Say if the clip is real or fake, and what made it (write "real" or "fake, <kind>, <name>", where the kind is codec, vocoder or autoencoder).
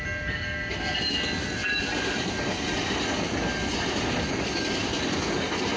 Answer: real